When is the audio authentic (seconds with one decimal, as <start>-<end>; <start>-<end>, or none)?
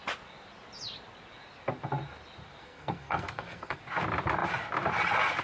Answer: 0.0-2.6; 3.8-5.4